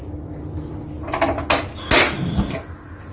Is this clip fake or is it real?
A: real